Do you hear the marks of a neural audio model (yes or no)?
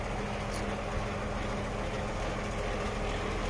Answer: no